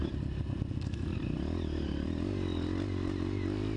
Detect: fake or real real